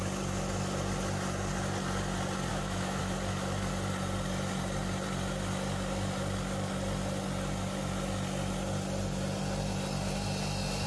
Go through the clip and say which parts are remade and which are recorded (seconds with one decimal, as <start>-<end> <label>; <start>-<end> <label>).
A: 0.0-2.5 recorded; 2.5-3.0 remade; 3.0-10.9 recorded